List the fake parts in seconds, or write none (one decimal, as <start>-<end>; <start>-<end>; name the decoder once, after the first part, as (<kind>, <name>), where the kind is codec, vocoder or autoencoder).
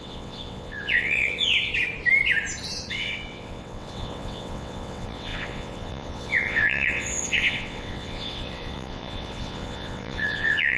0.0-1.7 (vocoder, WaveNeXt); 2.9-10.8